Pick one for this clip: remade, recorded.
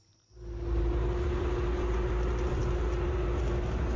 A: recorded